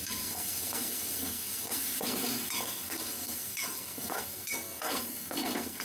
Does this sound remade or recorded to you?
remade